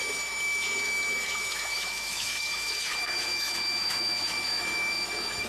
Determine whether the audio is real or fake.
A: fake